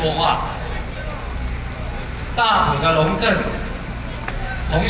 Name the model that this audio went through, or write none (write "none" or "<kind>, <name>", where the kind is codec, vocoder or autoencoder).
none